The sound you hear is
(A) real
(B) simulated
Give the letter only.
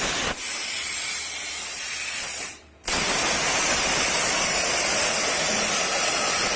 A